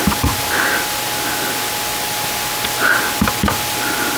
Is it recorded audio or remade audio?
recorded